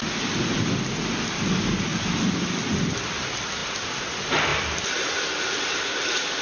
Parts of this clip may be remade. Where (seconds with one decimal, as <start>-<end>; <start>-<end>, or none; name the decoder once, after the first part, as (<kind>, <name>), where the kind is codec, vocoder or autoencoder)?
1.9-2.5 (vocoder, BigVGAN v2); 4.5-5.6